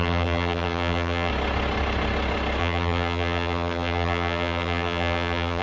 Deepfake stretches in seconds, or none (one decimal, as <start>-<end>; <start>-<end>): 0.0-1.3; 2.6-5.6